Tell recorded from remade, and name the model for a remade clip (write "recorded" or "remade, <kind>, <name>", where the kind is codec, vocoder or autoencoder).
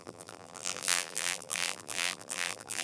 remade, vocoder, BigVGAN v2